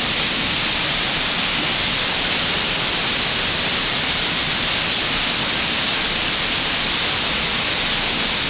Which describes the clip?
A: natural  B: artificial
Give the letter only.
A